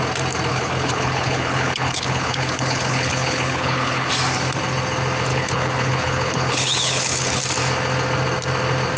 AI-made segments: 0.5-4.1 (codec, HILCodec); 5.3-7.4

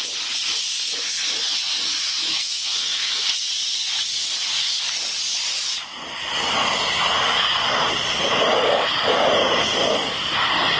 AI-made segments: 2.3-3.5 (codec, SNAC)

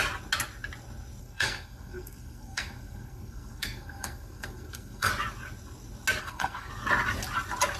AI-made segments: 1.2-5.1 (codec, SNAC); 6.2-6.7

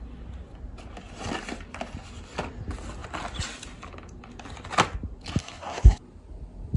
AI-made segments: 5.4-6.0 (codec, SNAC)

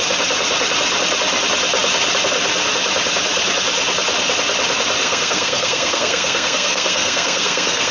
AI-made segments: 5.0-7.9 (codec, SNAC)